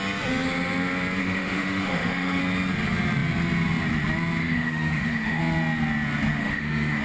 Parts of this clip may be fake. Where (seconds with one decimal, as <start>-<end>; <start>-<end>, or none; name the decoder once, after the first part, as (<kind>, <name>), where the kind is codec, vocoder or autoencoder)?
1.2-2.4 (autoencoder, DAC-VAE); 4.4-5.4; 6.4-7.0